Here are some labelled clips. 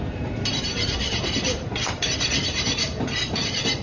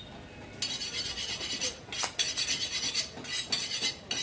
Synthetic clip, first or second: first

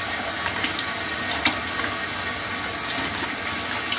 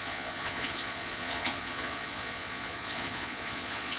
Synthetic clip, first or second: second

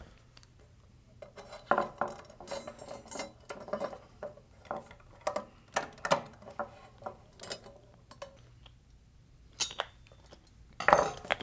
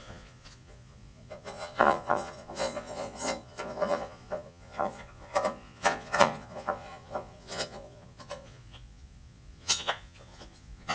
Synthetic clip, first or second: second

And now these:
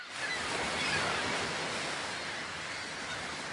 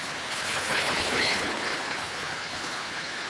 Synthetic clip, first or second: second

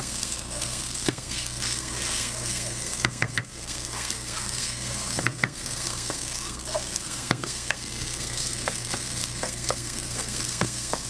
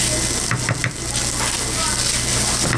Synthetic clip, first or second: first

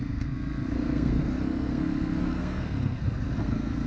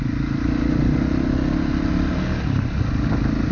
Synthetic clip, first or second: first